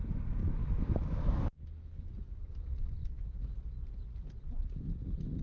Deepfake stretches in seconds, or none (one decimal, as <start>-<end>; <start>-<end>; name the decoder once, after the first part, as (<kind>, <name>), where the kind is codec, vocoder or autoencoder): 0.4-2.1 (autoencoder, DAC-VAE); 3.0-3.5